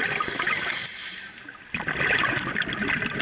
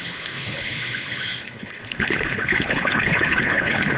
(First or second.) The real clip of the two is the first